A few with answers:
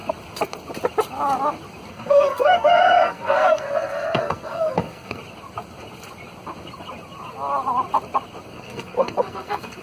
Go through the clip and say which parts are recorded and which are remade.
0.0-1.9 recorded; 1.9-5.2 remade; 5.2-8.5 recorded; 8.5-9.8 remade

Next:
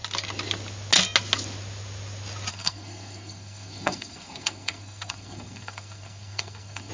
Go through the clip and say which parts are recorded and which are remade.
0.0-2.5 recorded; 2.5-6.9 remade

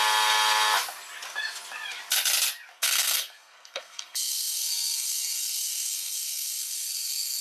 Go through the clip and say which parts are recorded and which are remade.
0.0-2.7 recorded; 2.7-7.4 remade

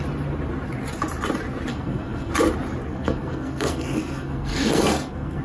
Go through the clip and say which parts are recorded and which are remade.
0.0-1.7 recorded; 1.7-2.3 remade; 2.3-2.9 recorded; 2.9-5.4 remade

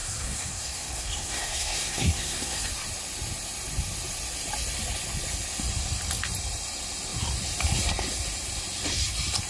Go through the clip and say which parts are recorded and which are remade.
0.0-2.7 remade; 2.7-9.5 recorded

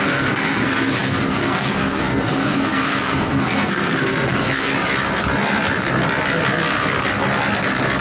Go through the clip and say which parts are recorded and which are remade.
0.0-4.7 remade; 4.7-8.0 recorded

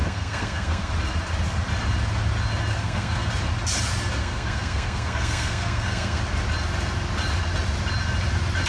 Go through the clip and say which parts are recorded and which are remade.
0.0-0.9 remade; 0.9-2.7 recorded; 2.7-3.3 remade; 3.3-4.2 recorded; 4.2-6.2 remade; 6.2-8.7 recorded

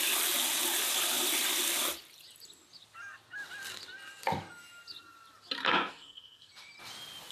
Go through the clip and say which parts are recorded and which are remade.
0.0-5.6 recorded; 5.6-6.5 remade; 6.5-7.3 recorded